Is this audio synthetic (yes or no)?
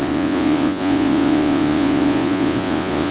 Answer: yes